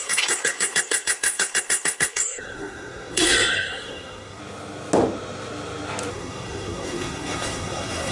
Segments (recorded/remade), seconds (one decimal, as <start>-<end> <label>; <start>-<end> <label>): 0.0-4.4 remade; 4.4-6.1 recorded; 6.1-8.1 remade